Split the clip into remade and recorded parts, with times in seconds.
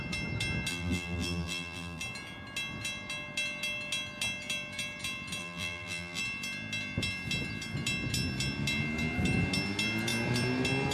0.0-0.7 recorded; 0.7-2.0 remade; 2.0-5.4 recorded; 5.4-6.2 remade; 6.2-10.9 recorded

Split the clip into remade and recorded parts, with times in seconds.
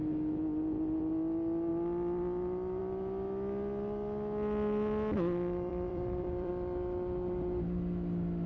0.0-5.7 recorded; 5.7-6.5 remade; 6.5-8.5 recorded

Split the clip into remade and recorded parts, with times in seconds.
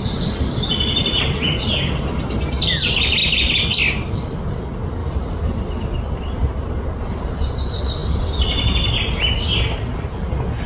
0.0-5.0 recorded; 5.0-5.8 remade; 5.8-10.7 recorded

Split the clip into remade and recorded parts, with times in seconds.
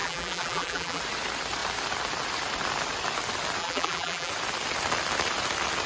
0.0-1.0 remade; 1.0-3.6 recorded; 3.6-4.3 remade; 4.3-5.9 recorded